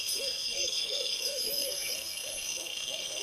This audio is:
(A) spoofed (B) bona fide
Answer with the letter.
A